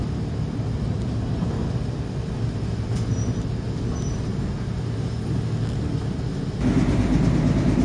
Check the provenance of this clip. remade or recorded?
recorded